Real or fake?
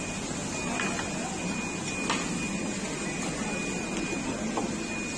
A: real